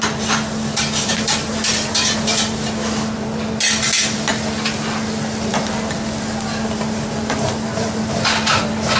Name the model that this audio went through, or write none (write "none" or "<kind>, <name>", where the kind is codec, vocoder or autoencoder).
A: none